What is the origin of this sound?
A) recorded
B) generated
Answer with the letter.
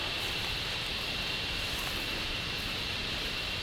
A